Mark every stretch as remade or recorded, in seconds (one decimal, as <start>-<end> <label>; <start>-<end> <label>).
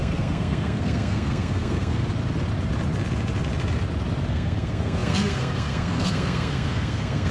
0.0-2.0 remade; 2.0-4.3 recorded; 4.3-7.3 remade